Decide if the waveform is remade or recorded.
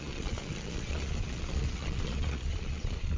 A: remade